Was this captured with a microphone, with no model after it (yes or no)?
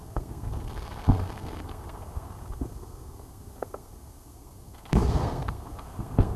no